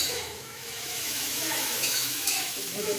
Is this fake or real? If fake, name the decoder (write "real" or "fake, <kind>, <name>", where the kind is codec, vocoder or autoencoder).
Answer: fake, autoencoder, DAC-VAE